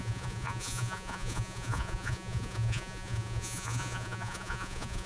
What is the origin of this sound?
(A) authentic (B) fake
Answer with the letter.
B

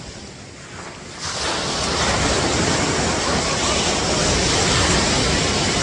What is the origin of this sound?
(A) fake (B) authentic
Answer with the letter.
B